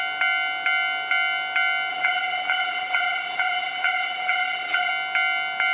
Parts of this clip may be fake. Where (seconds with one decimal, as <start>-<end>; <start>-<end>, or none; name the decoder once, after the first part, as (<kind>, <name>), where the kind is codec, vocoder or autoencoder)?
1.9-4.9 (vocoder, BigVGAN v2)